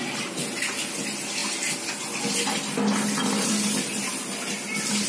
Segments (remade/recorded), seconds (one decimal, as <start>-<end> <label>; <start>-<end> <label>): 0.0-5.1 recorded